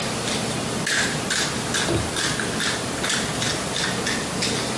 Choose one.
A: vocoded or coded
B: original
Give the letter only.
B